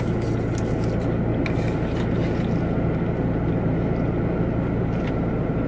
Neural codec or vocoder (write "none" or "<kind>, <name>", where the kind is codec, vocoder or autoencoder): none